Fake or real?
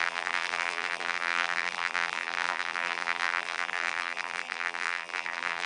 fake